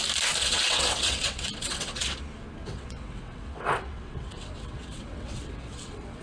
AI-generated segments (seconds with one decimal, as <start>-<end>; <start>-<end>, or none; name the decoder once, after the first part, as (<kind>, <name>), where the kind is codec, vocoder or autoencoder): 0.4-2.2 (vocoder, WaveNeXt); 2.6-6.2